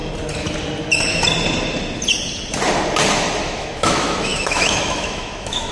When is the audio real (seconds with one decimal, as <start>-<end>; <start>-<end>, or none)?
0.0-3.4